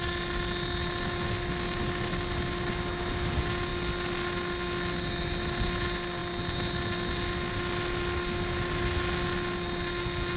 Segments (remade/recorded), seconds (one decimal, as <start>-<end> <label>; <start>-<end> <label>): 0.0-10.4 recorded